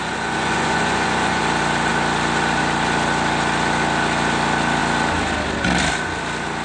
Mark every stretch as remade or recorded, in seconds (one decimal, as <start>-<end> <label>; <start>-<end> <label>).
0.0-1.4 remade; 1.4-6.6 recorded